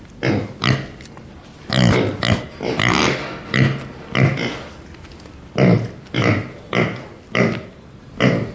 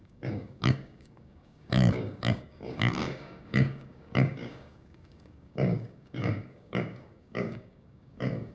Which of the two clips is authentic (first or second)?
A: first